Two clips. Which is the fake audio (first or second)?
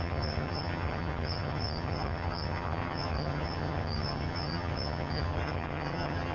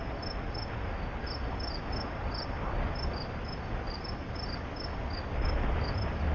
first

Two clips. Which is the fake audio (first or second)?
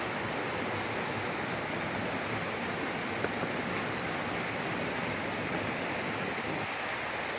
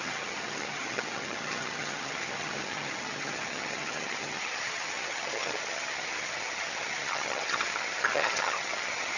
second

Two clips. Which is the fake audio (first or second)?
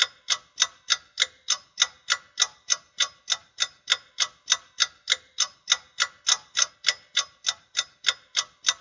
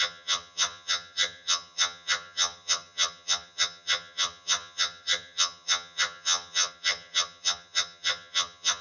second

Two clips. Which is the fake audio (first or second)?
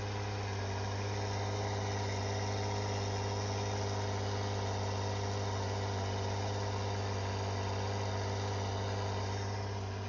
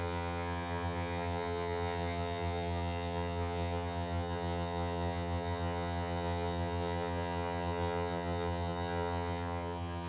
second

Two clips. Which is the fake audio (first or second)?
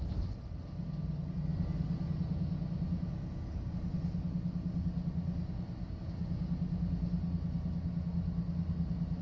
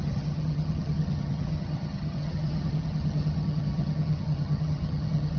second